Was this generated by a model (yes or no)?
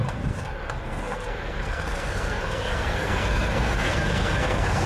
yes